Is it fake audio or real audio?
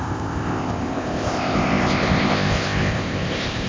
fake